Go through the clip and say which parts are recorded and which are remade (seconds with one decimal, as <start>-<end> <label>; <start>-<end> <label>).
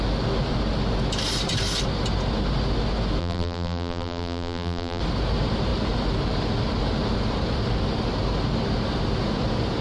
0.0-3.2 recorded; 3.2-5.0 remade; 5.0-9.8 recorded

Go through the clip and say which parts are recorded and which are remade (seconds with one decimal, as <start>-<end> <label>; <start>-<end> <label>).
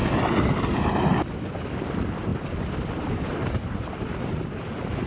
0.0-1.8 recorded; 1.8-5.1 remade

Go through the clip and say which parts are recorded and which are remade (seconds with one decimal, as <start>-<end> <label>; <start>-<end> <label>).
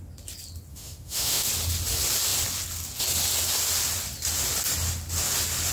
0.0-0.7 recorded; 0.7-1.5 remade; 1.5-5.7 recorded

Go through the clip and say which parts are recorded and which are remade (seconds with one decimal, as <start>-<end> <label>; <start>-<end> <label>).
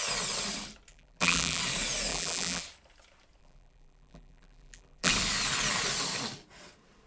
0.0-0.9 recorded; 0.9-1.6 remade; 1.6-2.1 recorded; 2.1-2.6 remade; 2.6-3.4 recorded; 3.4-5.1 remade; 5.1-7.1 recorded